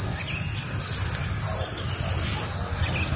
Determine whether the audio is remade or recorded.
recorded